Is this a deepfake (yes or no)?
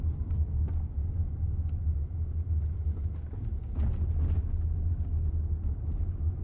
no